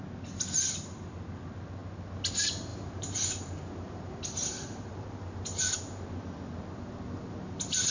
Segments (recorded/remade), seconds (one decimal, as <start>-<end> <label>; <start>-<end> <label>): 0.0-2.7 recorded; 2.7-6.0 remade; 6.0-7.9 recorded